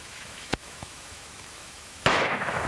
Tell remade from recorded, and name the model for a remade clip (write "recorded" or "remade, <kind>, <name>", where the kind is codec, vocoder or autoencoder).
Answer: remade, autoencoder, DAC-VAE